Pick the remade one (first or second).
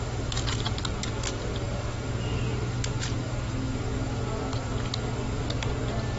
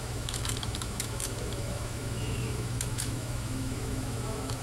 second